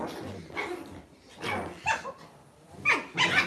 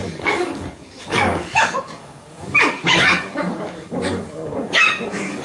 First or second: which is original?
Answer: first